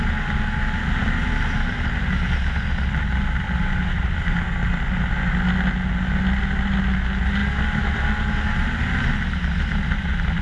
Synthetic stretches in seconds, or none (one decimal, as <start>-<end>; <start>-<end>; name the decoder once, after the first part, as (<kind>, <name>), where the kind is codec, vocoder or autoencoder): none